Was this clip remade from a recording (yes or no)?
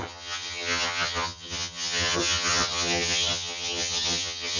yes